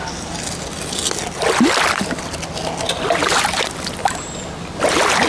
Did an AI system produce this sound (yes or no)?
no